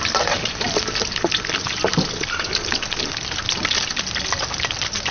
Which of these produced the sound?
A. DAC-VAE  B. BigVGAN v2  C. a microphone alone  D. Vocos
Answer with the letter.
C